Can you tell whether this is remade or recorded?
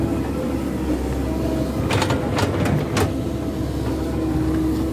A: recorded